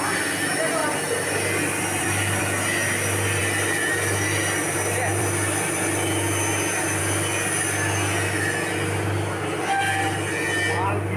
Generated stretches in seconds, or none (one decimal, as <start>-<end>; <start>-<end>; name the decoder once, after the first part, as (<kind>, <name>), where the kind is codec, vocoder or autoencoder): 0.8-2.4 (vocoder, BigVGAN v2); 3.4-7.0